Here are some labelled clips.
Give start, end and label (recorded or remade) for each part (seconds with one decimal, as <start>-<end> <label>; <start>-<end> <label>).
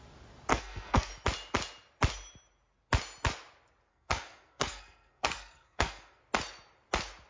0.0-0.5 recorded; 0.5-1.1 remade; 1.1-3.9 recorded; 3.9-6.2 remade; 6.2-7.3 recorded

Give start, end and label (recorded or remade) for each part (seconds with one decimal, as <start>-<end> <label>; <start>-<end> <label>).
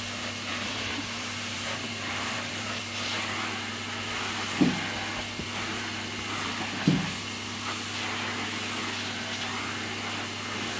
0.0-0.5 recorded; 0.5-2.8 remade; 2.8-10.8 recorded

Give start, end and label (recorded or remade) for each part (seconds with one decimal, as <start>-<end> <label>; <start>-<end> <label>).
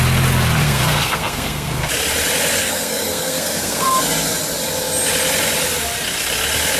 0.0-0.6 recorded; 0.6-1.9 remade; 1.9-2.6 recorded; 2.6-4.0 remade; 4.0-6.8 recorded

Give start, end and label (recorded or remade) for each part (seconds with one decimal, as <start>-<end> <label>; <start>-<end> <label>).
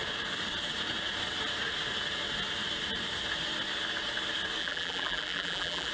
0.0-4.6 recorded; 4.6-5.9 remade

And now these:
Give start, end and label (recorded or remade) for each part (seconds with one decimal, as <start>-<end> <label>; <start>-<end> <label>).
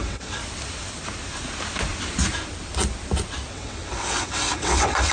0.0-0.4 remade; 0.4-3.5 recorded; 3.5-5.1 remade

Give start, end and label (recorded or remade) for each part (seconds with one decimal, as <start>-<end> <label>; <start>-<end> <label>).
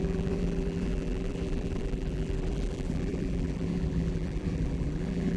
0.0-5.4 remade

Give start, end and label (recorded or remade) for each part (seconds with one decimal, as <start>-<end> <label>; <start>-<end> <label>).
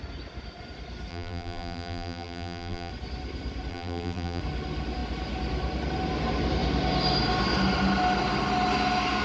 0.0-1.1 recorded; 1.1-2.9 remade; 2.9-3.7 recorded; 3.7-4.4 remade; 4.4-9.2 recorded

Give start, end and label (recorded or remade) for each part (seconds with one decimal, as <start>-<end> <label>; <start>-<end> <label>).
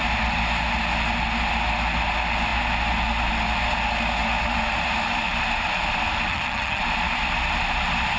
0.0-6.3 recorded; 6.3-6.8 remade; 6.8-8.2 recorded